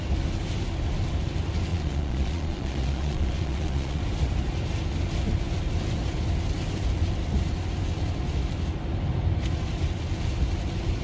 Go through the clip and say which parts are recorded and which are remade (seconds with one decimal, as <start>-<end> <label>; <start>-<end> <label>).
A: 0.0-1.7 recorded; 1.7-4.0 remade; 4.0-11.0 recorded